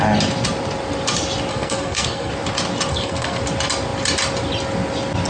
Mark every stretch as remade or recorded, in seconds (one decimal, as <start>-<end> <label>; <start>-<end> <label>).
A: 0.0-1.5 recorded; 1.5-2.3 remade; 2.3-2.9 recorded; 2.9-3.4 remade; 3.4-5.3 recorded